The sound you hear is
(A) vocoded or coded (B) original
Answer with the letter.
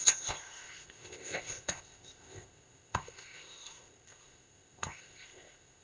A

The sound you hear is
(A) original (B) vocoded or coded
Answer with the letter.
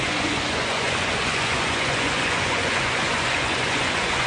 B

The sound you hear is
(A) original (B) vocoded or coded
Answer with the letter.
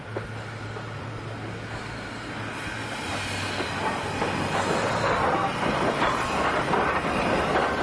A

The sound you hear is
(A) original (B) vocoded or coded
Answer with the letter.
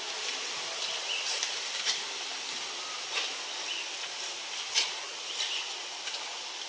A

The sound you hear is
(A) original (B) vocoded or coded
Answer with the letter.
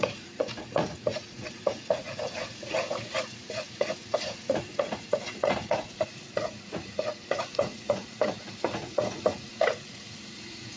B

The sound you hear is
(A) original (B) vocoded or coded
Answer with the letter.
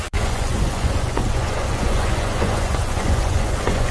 B